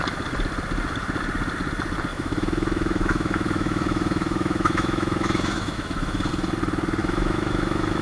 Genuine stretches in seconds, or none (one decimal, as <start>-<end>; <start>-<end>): 0.0-2.1; 6.3-7.0